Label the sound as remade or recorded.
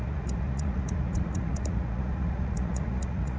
remade